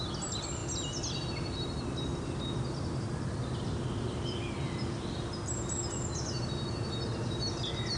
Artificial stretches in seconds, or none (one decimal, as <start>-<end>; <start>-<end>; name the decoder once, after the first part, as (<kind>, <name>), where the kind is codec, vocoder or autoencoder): none